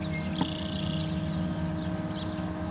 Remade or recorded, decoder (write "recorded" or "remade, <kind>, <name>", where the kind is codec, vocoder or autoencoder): recorded